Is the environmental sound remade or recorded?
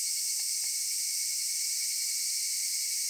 recorded